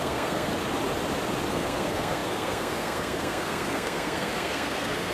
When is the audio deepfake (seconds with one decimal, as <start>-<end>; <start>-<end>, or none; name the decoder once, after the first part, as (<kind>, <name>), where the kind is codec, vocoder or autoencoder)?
0.0-0.5 (codec, SNAC); 1.5-5.1